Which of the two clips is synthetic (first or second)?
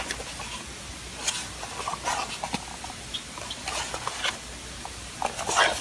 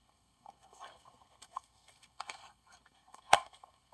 second